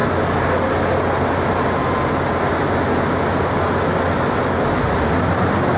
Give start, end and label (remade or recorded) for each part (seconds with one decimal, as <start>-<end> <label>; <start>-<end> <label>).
0.0-5.8 recorded